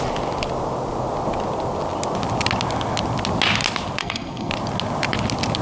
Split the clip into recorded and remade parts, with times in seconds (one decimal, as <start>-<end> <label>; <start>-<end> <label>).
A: 0.0-4.0 recorded; 4.0-4.5 remade; 4.5-5.6 recorded